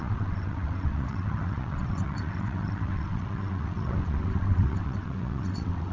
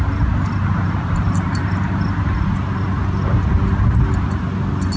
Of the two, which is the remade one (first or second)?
first